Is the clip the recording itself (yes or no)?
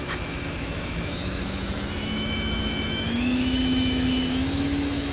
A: no